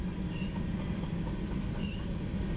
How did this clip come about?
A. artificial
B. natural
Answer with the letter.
B